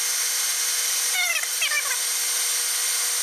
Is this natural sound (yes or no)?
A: yes